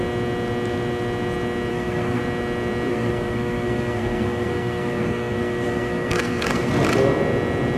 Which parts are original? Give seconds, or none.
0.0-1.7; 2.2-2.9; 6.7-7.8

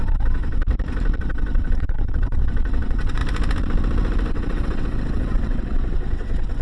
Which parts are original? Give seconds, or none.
0.6-1.2; 3.2-4.3

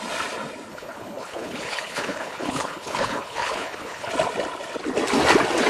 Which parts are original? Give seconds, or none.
0.0-0.7; 4.1-5.7

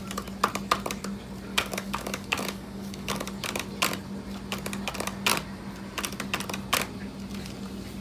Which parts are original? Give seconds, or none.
0.0-1.5; 3.2-8.0

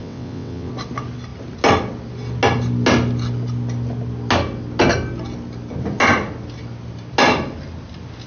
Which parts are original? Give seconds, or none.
0.7-8.3

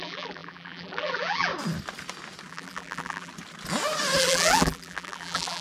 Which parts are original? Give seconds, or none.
1.5-2.5; 3.3-4.2